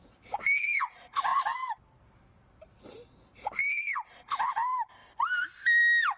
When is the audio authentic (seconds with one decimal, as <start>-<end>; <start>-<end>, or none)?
0.0-6.2